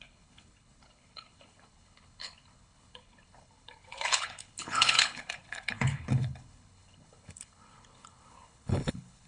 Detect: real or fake fake